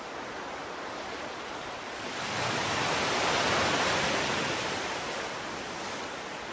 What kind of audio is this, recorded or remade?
recorded